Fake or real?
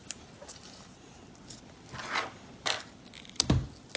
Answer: real